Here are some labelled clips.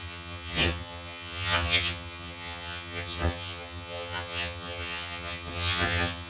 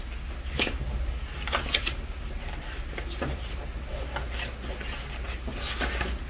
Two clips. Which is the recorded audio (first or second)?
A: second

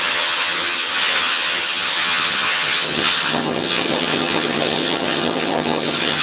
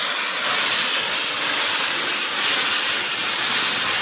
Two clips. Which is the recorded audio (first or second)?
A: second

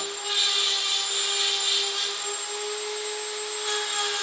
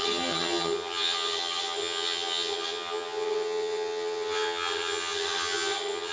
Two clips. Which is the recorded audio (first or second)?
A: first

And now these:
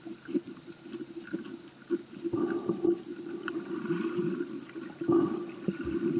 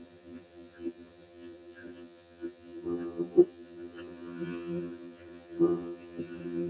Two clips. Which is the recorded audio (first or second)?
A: first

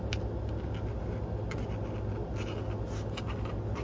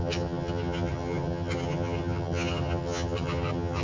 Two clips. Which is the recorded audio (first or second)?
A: first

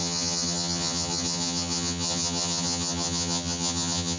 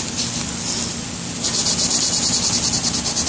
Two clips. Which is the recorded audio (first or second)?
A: second